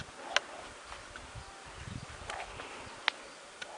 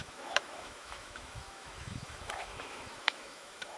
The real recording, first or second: first